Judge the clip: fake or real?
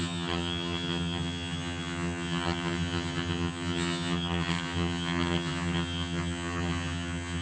fake